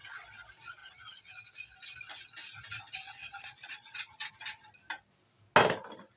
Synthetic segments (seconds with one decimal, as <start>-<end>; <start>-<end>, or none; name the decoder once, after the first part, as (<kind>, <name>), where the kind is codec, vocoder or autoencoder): 3.2-4.3 (vocoder, Vocos)